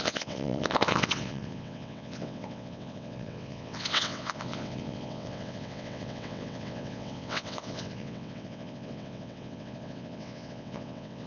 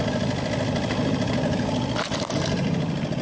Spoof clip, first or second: first